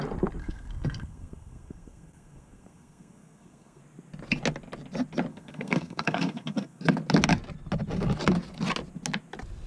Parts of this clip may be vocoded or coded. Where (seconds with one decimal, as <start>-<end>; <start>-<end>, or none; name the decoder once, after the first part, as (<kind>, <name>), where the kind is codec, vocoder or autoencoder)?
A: 0.4-3.8 (codec, SNAC); 5.3-6.8